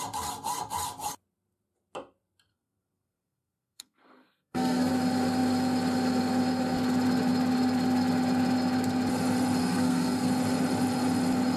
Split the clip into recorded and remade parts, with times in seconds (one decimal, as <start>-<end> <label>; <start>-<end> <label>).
0.0-2.5 recorded; 2.5-4.9 remade; 4.9-9.6 recorded; 9.6-10.3 remade; 10.3-11.6 recorded